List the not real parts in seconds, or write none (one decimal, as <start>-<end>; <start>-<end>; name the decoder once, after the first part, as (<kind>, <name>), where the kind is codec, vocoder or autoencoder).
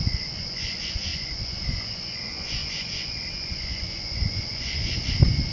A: 0.0-5.5 (vocoder, Vocos)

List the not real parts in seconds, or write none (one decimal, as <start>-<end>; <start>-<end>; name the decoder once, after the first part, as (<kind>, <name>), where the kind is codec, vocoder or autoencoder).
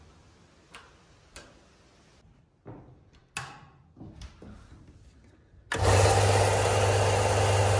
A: none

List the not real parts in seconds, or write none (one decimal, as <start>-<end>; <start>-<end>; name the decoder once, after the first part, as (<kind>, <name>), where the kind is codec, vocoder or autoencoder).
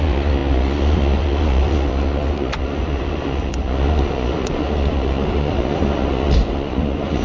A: 0.0-7.2 (vocoder, Vocos)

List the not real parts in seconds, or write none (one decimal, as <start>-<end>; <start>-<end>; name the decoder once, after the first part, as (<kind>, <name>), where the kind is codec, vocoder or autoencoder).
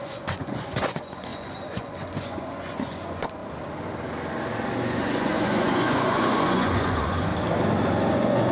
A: 0.0-3.4 (vocoder, Vocos); 4.8-7.3; 8.1-8.5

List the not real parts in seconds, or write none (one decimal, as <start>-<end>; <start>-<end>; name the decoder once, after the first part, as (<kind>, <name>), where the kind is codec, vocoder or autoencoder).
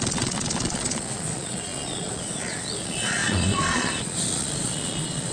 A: 0.0-5.3 (vocoder, Vocos)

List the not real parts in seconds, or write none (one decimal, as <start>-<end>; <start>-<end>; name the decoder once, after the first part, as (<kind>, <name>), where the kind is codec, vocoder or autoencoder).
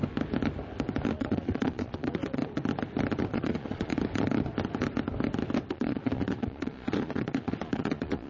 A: 1.1-2.4 (vocoder, Vocos); 3.3-3.9; 5.7-8.3